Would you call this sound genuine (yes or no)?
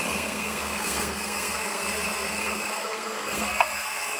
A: no